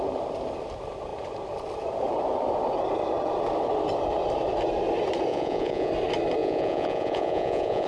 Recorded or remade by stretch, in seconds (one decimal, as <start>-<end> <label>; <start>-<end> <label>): 0.0-5.3 recorded; 5.3-5.9 remade; 5.9-6.4 recorded; 6.4-7.9 remade

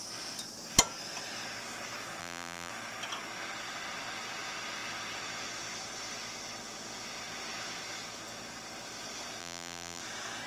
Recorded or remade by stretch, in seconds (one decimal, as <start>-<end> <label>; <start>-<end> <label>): 0.0-2.2 recorded; 2.2-2.7 remade; 2.7-9.4 recorded; 9.4-10.0 remade; 10.0-10.5 recorded

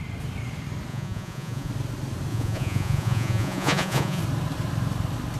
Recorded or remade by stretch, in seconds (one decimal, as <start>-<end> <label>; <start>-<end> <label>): 0.0-0.9 recorded; 0.9-1.7 remade; 1.7-2.3 recorded; 2.3-4.2 remade; 4.2-5.4 recorded

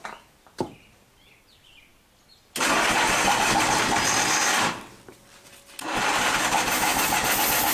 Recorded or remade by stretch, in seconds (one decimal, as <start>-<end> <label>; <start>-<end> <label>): 0.0-7.7 recorded

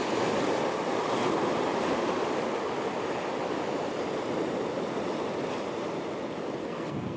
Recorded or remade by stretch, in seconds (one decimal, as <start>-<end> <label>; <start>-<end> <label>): 0.0-6.6 recorded; 6.6-7.2 remade